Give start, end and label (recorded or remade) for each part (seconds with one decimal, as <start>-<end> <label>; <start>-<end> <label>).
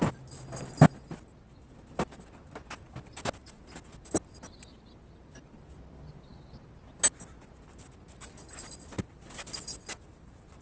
0.0-10.6 recorded